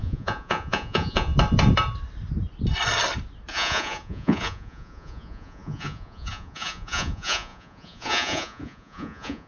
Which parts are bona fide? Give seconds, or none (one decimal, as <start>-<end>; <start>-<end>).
1.3-3.5